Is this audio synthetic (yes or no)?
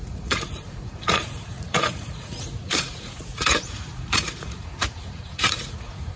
yes